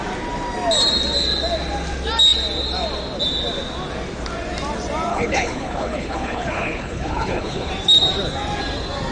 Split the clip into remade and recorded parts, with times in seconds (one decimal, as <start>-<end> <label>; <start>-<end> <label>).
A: 0.0-5.1 recorded; 5.1-7.7 remade; 7.7-9.1 recorded